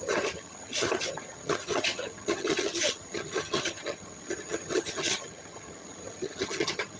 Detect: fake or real fake